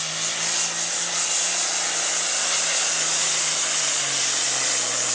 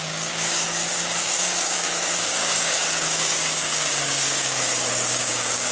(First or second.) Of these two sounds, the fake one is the second